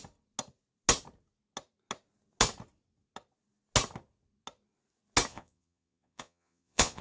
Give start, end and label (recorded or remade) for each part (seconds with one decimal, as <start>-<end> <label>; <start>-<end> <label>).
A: 0.0-5.3 recorded; 5.3-7.0 remade